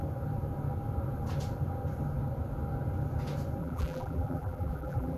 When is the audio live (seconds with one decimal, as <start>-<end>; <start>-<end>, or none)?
0.0-3.6